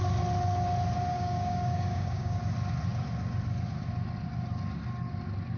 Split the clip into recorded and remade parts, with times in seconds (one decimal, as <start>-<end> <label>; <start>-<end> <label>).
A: 0.0-1.1 recorded; 1.1-2.4 remade; 2.4-5.6 recorded